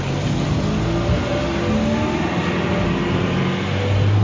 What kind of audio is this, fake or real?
real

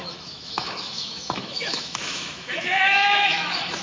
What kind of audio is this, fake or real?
fake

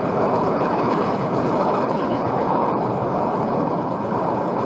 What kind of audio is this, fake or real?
fake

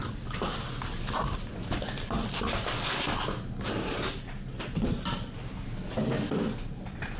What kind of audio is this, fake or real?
real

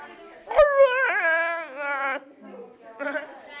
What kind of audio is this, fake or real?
real